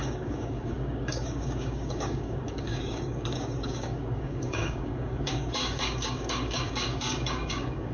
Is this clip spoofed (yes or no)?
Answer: yes